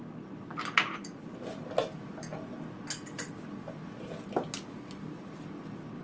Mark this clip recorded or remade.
recorded